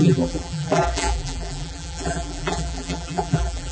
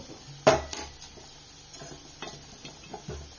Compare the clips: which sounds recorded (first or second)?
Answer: second